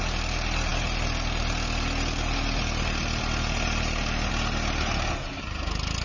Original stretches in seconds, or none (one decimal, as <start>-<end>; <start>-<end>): 0.0-6.0